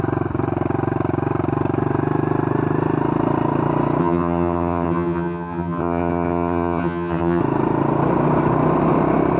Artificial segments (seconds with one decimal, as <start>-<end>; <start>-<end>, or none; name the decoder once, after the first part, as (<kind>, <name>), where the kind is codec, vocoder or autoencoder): 4.0-7.4 (vocoder, HiFi-GAN)